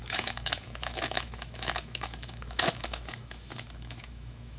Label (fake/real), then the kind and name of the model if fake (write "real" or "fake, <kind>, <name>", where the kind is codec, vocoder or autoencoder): fake, autoencoder, DAC-VAE